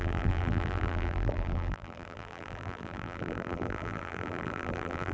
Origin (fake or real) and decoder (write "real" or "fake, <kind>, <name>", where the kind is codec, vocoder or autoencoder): fake, vocoder, BigVGAN v2